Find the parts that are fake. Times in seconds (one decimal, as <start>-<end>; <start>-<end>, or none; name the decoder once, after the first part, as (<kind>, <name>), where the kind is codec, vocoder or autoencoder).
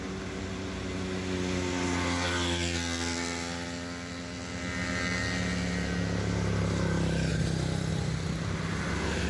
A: none